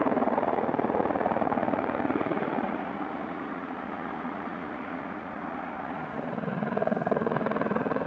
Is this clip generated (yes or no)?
yes